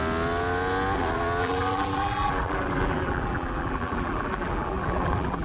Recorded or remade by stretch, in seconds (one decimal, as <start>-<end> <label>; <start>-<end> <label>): 0.0-1.4 recorded; 1.4-5.4 remade